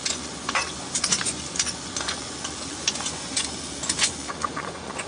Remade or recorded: remade